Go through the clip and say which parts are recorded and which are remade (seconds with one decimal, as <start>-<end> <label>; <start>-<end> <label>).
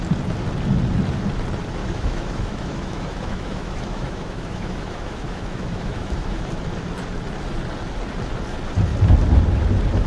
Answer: 0.0-1.8 recorded; 1.8-6.4 remade; 6.4-10.1 recorded